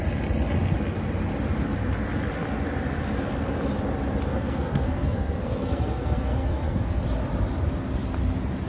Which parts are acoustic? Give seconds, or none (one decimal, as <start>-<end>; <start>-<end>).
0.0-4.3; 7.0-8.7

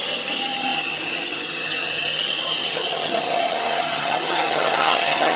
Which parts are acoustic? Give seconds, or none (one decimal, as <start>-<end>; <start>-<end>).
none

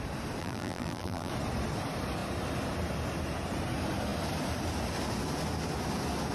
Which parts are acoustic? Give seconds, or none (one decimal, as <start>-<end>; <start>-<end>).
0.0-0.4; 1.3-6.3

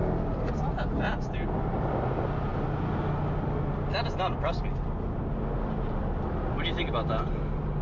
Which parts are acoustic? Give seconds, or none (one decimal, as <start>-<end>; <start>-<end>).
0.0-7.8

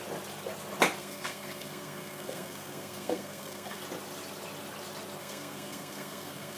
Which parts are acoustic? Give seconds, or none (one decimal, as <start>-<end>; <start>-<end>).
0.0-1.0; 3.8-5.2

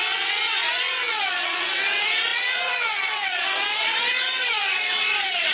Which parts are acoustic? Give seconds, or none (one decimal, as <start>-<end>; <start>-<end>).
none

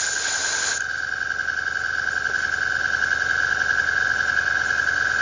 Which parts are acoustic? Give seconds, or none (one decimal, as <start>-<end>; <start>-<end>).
0.0-5.2

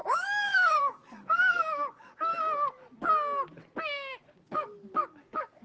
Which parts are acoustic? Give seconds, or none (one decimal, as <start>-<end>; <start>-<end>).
2.3-4.4